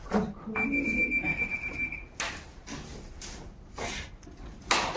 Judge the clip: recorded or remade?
recorded